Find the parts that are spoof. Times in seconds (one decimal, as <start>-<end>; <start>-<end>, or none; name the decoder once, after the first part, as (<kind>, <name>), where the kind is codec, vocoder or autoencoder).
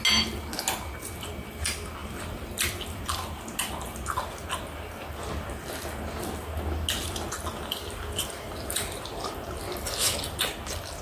2.0-3.4 (vocoder, BigVGAN v2); 7.5-10.4